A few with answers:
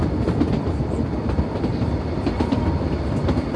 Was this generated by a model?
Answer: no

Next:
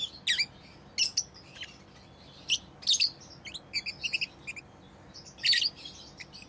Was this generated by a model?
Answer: no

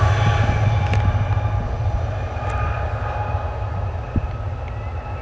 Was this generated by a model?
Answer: no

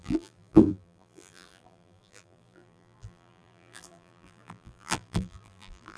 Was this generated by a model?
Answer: yes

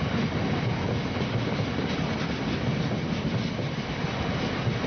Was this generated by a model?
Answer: no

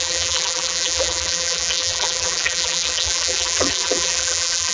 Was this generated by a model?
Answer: yes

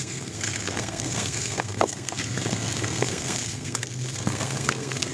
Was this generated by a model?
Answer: yes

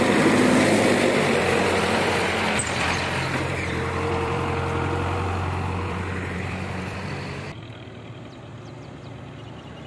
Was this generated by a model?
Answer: yes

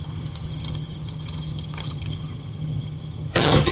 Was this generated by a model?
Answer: yes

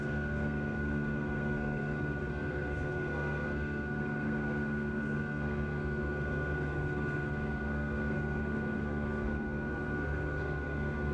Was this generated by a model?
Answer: yes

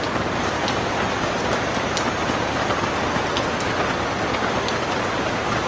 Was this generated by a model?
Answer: no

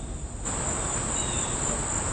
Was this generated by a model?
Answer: no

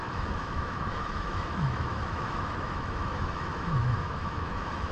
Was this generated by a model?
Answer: yes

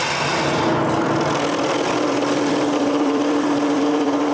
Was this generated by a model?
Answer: yes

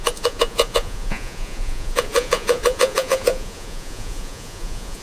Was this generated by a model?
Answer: yes